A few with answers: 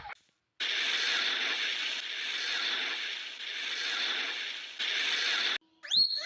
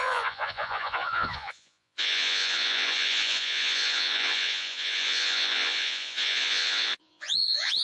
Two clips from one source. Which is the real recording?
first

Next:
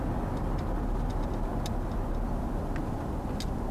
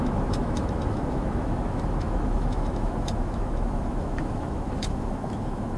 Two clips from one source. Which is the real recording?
first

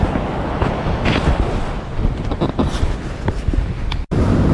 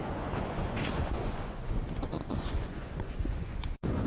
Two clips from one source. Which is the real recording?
first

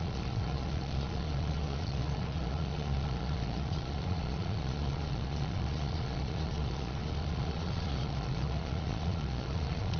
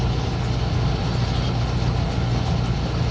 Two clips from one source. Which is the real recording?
second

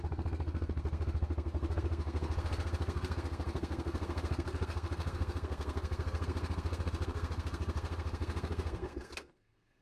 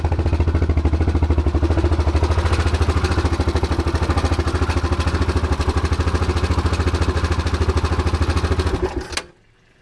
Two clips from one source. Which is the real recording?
second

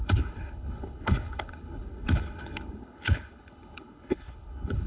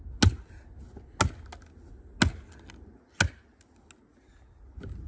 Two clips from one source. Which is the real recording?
second